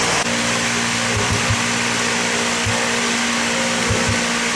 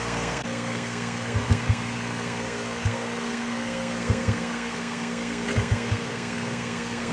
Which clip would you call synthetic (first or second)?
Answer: second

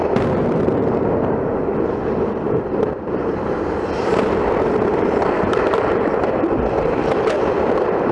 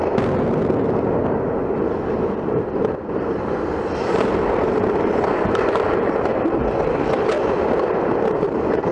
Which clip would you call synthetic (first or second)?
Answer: first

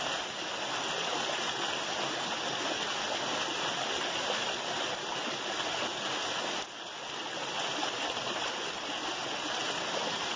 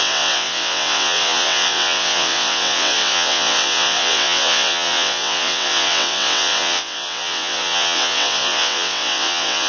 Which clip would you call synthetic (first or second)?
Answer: second